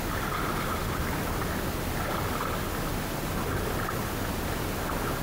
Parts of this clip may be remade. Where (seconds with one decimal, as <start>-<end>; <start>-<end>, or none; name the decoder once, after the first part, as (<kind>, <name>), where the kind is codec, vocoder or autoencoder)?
none

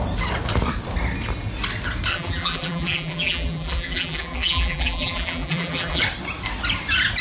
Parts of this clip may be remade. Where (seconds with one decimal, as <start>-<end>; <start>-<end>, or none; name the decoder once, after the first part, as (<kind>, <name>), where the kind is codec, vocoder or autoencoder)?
2.1-6.0 (vocoder, BigVGAN v2)

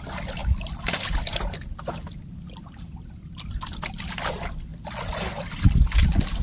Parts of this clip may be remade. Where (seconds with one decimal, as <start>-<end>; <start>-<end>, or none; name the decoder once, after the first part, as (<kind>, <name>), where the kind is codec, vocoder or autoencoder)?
0.4-2.8 (vocoder, BigVGAN v2); 4.7-5.6